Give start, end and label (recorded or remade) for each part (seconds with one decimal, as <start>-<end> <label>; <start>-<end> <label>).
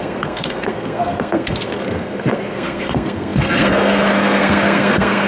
0.0-5.3 remade